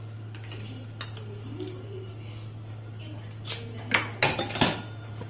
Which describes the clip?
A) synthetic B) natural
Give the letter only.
B